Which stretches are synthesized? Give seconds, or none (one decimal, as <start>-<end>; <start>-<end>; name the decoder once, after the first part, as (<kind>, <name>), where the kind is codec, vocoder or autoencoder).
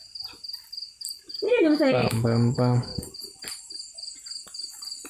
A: 1.7-2.9 (autoencoder, DAC-VAE)